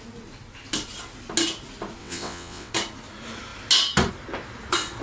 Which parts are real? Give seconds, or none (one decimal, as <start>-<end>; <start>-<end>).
0.0-2.0; 2.7-5.0